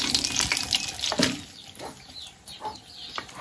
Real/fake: real